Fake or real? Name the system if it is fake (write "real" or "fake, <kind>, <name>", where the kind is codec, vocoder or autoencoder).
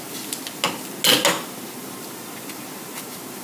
real